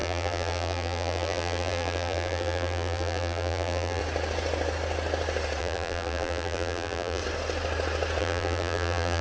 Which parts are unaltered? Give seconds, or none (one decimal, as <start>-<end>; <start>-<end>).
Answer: 4.0-5.6; 7.2-8.2